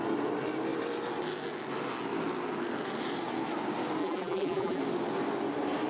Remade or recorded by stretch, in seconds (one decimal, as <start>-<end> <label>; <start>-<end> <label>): 0.0-4.0 recorded; 4.0-4.8 remade; 4.8-5.9 recorded